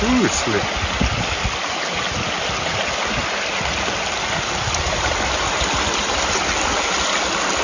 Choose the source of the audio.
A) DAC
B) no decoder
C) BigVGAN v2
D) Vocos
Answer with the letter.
B